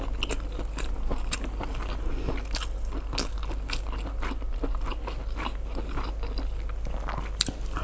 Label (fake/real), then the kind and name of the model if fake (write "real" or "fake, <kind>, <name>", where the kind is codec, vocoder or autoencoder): real